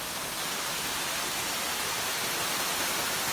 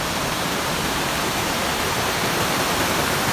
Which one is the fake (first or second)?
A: second